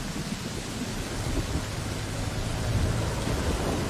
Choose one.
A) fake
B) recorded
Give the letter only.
B